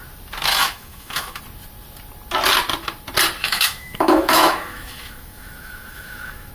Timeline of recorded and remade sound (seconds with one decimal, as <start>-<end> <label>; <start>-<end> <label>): 0.0-0.5 recorded; 0.5-1.4 remade; 1.4-3.4 recorded; 3.4-6.5 remade